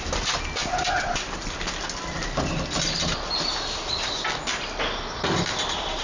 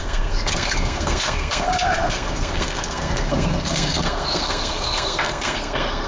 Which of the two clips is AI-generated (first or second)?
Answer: second